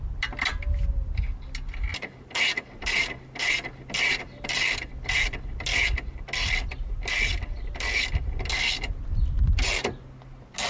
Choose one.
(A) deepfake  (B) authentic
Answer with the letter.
B